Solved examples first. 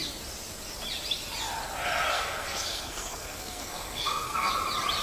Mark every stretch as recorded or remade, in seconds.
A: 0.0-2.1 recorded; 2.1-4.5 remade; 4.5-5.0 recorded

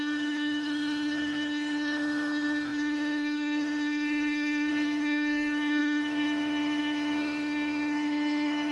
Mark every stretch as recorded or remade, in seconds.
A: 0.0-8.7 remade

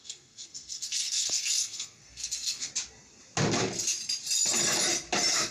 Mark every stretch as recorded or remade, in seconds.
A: 0.0-2.7 remade; 2.7-5.5 recorded

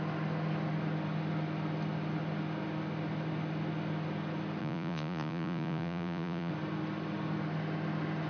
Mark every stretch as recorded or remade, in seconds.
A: 0.0-4.6 recorded; 4.6-6.5 remade; 6.5-8.3 recorded

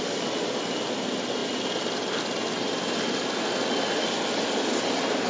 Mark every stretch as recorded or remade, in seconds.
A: 0.0-1.4 recorded; 1.4-2.2 remade; 2.2-5.3 recorded